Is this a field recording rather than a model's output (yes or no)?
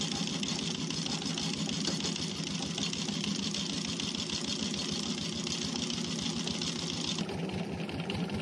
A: yes